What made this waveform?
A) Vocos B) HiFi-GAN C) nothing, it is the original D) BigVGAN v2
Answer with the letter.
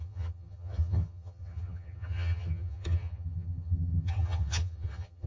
B